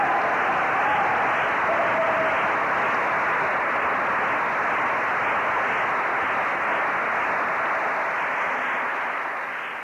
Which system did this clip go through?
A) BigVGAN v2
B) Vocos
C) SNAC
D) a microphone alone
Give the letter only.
D